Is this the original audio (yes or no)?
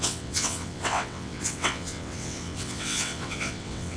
no